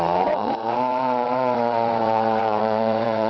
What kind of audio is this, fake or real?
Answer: fake